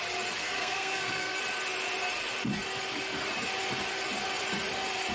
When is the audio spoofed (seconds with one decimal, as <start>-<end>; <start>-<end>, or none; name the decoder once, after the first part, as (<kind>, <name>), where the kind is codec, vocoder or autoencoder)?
0.4-1.4 (codec, SNAC)